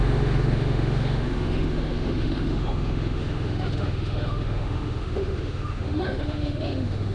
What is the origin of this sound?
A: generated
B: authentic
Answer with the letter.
A